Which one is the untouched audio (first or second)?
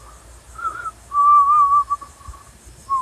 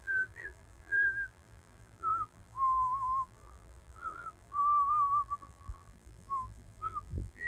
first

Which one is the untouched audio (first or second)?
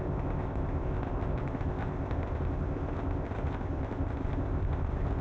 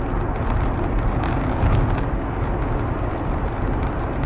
second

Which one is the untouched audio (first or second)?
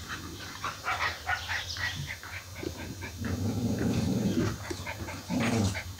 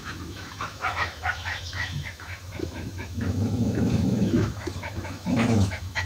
first